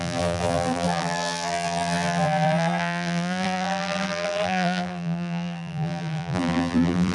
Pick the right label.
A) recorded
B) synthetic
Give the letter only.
B